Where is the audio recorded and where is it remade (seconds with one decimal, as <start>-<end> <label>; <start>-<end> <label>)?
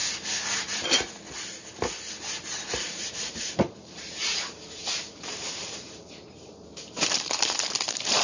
0.0-2.7 recorded; 2.7-4.8 remade; 4.8-5.4 recorded; 5.4-8.2 remade